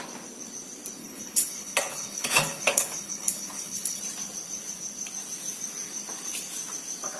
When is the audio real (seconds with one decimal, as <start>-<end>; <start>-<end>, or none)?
0.0-1.0; 4.0-7.2